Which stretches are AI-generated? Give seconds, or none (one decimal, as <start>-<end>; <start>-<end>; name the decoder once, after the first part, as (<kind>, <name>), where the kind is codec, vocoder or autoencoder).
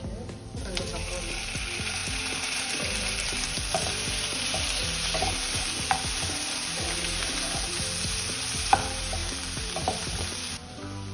0.0-11.1 (vocoder, BigVGAN v2)